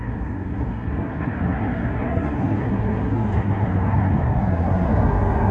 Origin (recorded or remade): remade